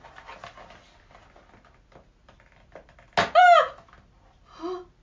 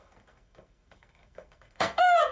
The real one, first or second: first